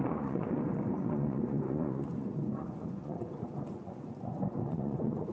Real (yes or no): no